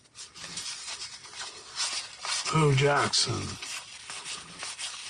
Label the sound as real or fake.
real